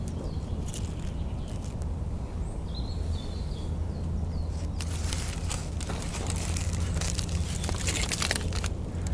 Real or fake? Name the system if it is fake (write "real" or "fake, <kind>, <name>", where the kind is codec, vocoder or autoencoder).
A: real